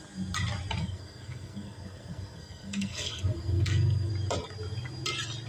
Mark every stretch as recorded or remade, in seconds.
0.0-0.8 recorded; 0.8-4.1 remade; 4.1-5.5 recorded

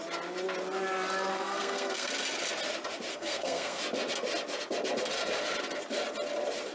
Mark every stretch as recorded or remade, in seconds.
0.0-1.3 recorded; 1.3-2.1 remade; 2.1-3.1 recorded; 3.1-3.8 remade; 3.8-6.7 recorded

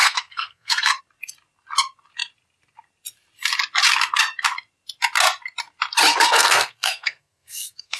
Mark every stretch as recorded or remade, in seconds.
0.0-1.0 remade; 1.0-6.1 recorded; 6.1-8.0 remade

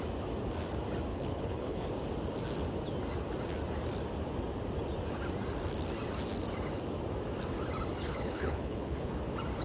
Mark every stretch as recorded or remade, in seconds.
0.0-1.1 recorded; 1.1-1.9 remade; 1.9-8.1 recorded; 8.1-9.1 remade; 9.1-9.6 recorded